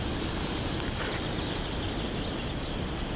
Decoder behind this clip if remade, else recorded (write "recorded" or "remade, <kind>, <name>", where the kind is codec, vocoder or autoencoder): recorded